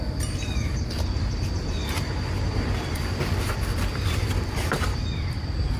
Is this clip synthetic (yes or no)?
yes